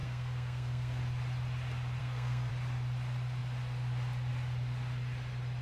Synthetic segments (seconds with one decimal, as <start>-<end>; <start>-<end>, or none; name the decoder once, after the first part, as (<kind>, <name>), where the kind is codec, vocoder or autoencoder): 0.0-1.0 (codec, SNAC); 2.0-2.5